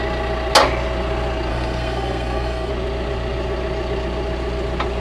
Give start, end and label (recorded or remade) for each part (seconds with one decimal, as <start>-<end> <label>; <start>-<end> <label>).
0.0-1.5 recorded; 1.5-2.7 remade; 2.7-5.0 recorded